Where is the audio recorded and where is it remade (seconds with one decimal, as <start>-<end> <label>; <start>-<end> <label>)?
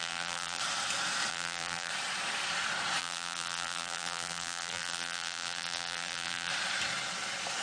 0.0-0.6 remade; 0.6-1.3 recorded; 1.3-1.9 remade; 1.9-3.0 recorded; 3.0-6.5 remade; 6.5-7.6 recorded